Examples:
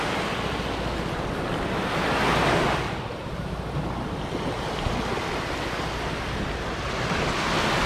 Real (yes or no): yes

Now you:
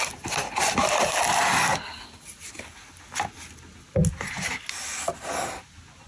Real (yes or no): yes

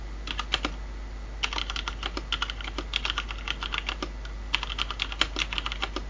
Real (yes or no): yes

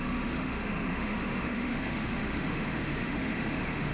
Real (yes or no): no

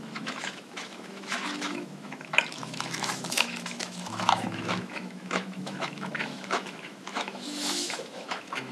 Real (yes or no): no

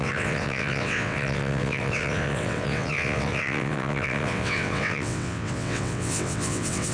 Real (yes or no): no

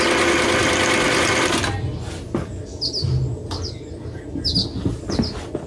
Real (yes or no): yes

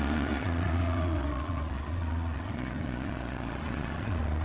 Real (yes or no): no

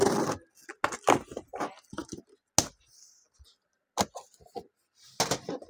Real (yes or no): yes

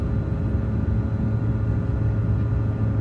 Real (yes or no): yes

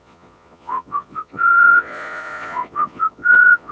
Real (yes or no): no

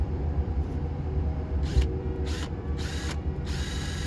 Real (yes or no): no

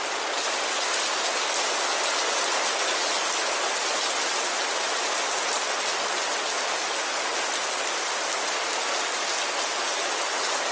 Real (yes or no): yes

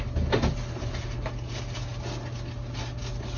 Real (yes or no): yes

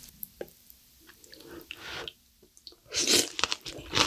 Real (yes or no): yes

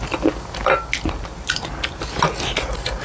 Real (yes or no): yes